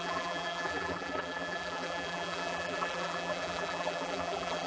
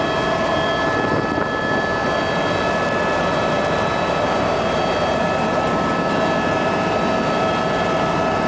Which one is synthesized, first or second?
first